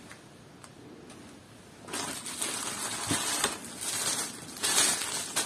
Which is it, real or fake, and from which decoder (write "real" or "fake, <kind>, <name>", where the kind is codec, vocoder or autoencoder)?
real